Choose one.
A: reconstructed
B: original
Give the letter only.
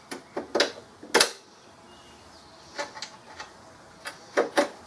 B